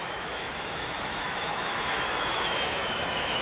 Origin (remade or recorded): remade